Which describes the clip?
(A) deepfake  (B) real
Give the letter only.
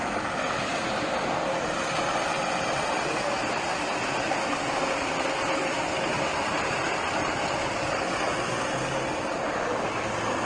B